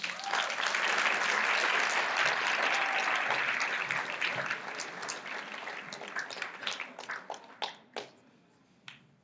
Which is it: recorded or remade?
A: recorded